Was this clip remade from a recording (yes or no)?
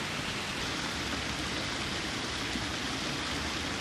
no